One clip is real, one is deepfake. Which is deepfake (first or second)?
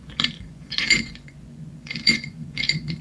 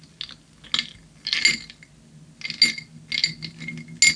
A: first